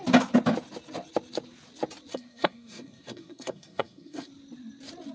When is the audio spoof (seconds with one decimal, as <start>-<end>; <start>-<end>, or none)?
2.1-4.3